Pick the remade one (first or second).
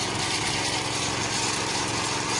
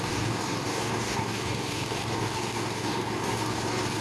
second